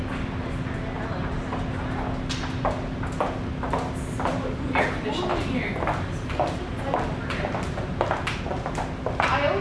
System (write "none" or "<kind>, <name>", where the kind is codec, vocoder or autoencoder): none